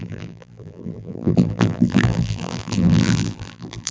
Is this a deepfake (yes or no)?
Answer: yes